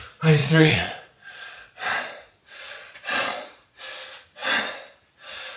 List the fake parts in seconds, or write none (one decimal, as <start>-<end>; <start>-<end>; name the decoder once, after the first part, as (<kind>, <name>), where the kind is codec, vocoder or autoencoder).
0.4-3.8 (vocoder, Vocos)